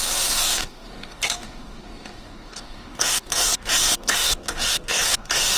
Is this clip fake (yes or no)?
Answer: yes